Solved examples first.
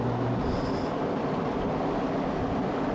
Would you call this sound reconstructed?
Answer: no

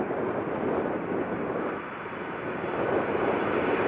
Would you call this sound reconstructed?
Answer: no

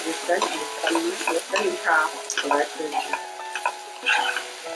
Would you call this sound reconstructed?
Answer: no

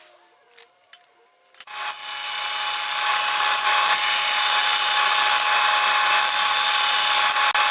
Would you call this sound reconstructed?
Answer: no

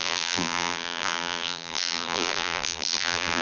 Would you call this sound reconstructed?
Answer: yes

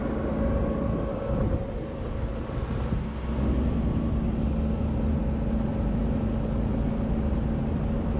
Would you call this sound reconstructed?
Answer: no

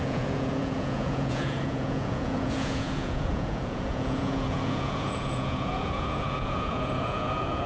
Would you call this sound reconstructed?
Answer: yes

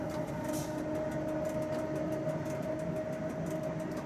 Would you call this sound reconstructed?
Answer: no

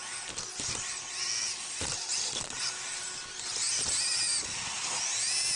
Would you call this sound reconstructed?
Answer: no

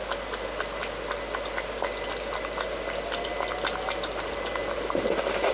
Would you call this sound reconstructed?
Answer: no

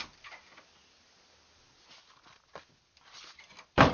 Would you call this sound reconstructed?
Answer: no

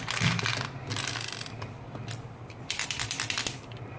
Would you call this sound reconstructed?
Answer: no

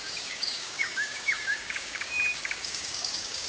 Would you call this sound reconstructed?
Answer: yes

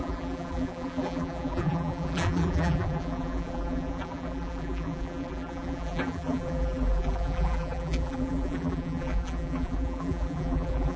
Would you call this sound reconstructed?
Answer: yes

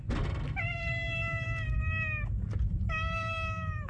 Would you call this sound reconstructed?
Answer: no